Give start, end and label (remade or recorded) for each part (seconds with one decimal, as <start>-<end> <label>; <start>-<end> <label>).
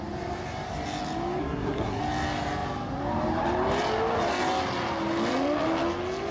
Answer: 0.0-1.4 recorded; 1.4-2.0 remade; 2.0-6.3 recorded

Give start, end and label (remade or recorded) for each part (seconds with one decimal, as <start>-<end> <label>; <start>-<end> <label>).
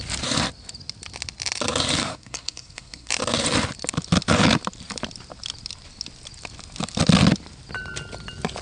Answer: 0.0-2.0 recorded; 2.0-3.1 remade; 3.1-8.6 recorded